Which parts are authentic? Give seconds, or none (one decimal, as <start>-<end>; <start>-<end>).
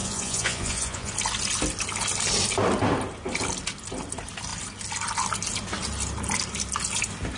1.1-7.4